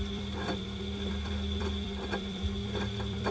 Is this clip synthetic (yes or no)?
yes